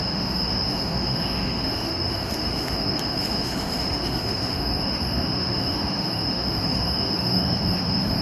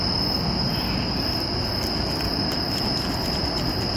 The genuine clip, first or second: second